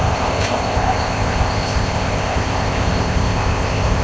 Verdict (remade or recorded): remade